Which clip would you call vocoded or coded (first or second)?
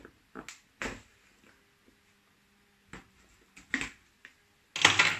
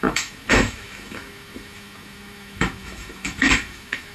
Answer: second